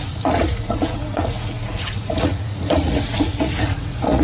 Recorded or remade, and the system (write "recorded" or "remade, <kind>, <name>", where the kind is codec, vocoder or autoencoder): remade, vocoder, Vocos